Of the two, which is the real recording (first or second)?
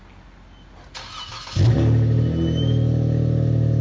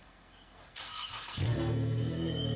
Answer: first